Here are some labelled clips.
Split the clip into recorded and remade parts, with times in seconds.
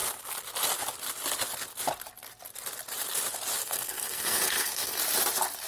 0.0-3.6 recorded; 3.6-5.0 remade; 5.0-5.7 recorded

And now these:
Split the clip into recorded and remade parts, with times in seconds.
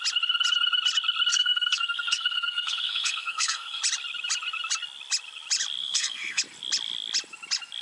0.0-1.3 recorded; 1.3-3.8 remade; 3.8-5.8 recorded; 5.8-6.4 remade; 6.4-7.8 recorded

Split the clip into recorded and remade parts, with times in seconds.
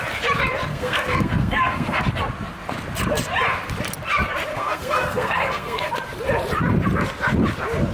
0.0-0.7 recorded; 0.7-2.0 remade; 2.0-4.5 recorded; 4.5-5.9 remade; 5.9-7.9 recorded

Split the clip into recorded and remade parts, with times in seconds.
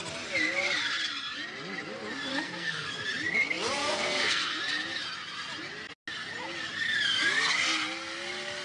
0.0-2.3 recorded; 2.3-2.9 remade; 2.9-3.8 recorded; 3.8-4.6 remade; 4.6-8.6 recorded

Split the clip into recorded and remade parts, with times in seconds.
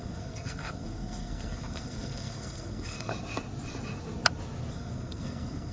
0.0-3.1 remade; 3.1-4.7 recorded; 4.7-5.7 remade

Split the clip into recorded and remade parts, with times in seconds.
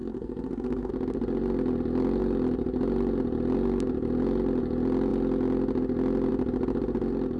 0.0-0.9 remade; 0.9-7.4 recorded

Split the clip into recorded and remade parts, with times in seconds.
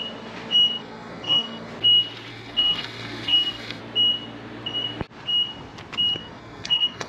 0.0-0.8 recorded; 0.8-1.7 remade; 1.7-2.3 recorded; 2.3-3.8 remade; 3.8-6.2 recorded; 6.2-7.1 remade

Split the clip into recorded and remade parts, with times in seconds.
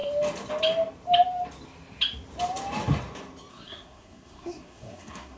0.0-3.5 recorded; 3.5-5.4 remade